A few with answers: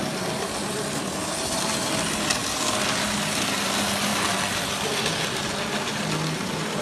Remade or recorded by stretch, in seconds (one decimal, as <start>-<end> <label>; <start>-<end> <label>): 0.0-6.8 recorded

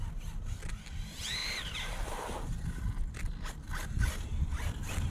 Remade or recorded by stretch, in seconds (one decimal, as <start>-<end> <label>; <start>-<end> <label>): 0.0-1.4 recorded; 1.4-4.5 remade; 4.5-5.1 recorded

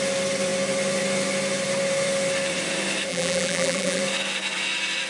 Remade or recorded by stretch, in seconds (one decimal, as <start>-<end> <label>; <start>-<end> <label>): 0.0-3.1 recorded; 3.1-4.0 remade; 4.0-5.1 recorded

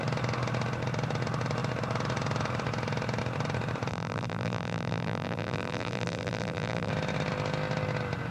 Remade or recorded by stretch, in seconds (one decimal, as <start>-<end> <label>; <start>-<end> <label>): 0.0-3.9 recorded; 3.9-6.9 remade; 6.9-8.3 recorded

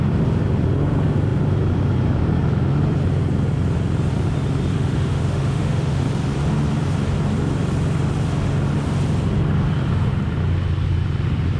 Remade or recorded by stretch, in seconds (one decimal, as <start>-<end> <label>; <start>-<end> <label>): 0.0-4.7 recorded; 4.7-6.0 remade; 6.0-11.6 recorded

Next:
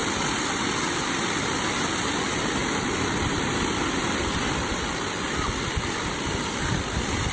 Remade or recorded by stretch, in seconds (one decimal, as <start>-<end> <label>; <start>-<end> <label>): 0.0-7.3 recorded